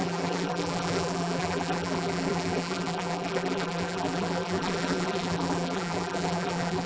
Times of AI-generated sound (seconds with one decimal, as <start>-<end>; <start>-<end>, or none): 0.0-6.9